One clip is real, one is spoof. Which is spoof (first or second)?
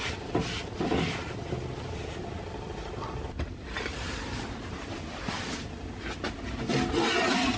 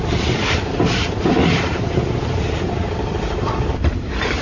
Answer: second